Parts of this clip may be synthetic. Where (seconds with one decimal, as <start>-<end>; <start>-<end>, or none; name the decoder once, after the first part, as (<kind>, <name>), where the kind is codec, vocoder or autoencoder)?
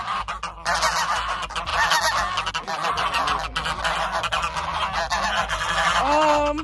none